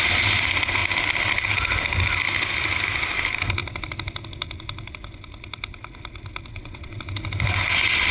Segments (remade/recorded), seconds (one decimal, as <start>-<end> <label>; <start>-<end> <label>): 0.0-6.5 recorded; 6.5-7.0 remade; 7.0-8.1 recorded